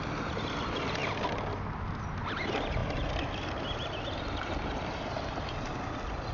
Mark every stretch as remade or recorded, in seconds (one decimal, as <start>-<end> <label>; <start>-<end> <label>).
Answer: 0.0-6.3 recorded